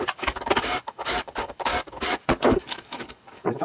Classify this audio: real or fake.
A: fake